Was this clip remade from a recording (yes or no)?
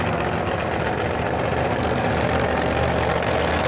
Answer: no